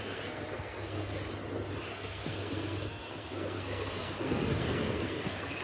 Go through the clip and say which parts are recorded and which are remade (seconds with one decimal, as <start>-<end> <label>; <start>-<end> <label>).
0.0-1.2 remade; 1.2-1.9 recorded; 1.9-5.6 remade